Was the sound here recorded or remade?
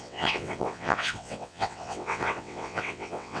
remade